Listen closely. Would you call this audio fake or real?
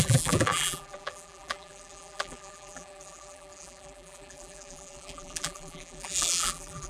fake